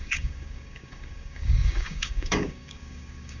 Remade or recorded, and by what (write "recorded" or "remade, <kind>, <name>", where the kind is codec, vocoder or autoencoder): remade, codec, DAC